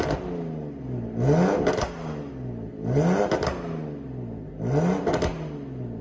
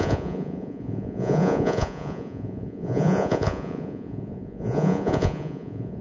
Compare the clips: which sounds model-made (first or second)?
second